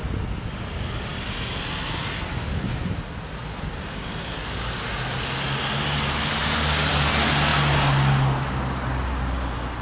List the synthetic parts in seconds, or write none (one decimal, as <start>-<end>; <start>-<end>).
none